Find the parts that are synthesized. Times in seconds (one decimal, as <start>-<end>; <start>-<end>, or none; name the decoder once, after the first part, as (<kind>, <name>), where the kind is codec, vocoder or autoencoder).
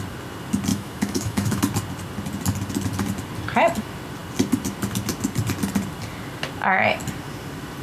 0.7-1.6 (autoencoder, DAC-VAE)